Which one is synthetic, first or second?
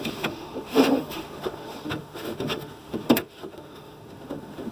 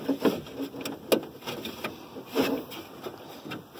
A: first